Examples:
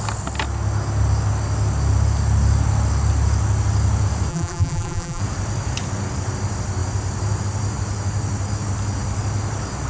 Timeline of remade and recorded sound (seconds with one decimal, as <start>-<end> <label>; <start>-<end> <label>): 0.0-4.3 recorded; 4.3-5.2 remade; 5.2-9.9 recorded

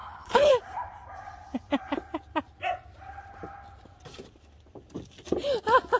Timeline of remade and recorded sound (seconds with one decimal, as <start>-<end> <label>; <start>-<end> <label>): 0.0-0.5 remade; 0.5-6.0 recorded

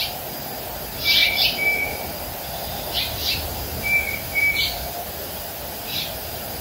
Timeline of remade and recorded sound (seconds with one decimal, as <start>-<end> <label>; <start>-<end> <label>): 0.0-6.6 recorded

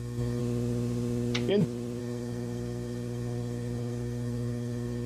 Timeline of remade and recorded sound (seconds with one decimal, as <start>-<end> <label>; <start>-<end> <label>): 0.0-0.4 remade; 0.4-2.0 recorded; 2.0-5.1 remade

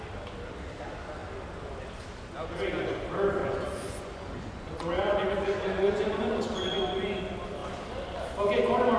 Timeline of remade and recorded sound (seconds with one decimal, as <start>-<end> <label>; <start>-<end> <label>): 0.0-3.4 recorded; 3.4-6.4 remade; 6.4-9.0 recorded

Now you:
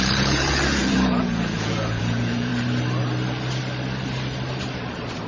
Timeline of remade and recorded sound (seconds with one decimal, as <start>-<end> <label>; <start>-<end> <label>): 0.0-2.5 remade; 2.5-5.3 recorded

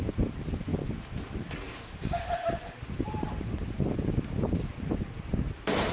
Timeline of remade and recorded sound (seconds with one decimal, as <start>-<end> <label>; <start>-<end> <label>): 0.0-5.9 recorded

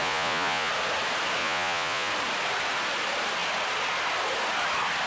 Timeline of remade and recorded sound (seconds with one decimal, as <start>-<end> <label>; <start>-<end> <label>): 0.0-0.7 remade; 0.7-1.4 recorded; 1.4-2.1 remade; 2.1-5.1 recorded